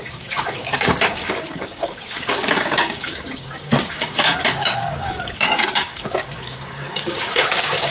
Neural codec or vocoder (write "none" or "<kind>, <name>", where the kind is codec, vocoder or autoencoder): codec, DAC